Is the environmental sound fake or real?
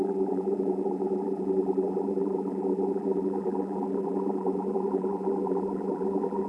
fake